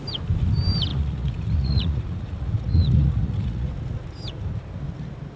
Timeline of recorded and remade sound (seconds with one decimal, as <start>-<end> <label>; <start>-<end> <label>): 0.0-0.9 recorded; 0.9-3.7 remade; 3.7-5.4 recorded